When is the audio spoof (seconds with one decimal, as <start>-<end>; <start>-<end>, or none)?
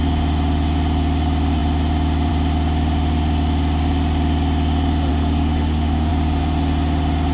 5.1-6.1